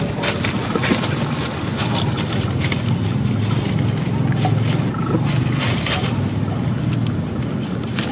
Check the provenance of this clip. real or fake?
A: real